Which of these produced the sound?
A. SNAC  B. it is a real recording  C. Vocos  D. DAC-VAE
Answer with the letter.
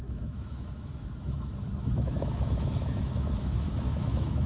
D